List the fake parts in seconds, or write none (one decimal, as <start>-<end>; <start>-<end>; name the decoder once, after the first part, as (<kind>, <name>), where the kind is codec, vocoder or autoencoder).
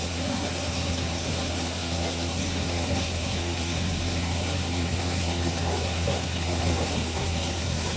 0.0-8.0 (codec, SNAC)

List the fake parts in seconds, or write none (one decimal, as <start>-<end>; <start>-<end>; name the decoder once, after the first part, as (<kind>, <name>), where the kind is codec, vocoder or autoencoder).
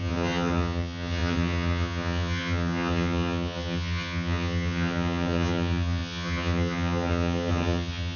0.0-8.2 (vocoder, HiFi-GAN)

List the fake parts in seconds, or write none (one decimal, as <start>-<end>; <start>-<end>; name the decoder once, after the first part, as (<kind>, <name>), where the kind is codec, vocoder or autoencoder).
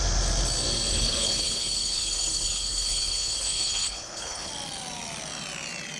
0.9-4.5 (codec, HILCodec)